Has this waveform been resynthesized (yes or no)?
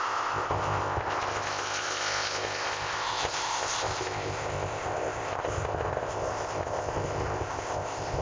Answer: yes